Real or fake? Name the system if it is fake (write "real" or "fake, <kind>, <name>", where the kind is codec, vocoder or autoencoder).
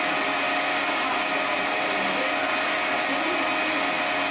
real